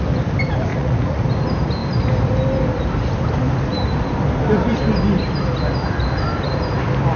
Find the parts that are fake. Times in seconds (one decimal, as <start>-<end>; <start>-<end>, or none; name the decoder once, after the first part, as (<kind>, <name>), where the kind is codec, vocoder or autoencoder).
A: 0.7-1.3 (vocoder, Vocos)